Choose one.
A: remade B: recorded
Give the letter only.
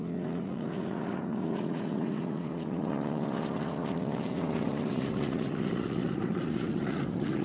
A